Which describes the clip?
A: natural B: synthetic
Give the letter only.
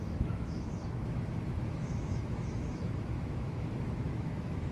B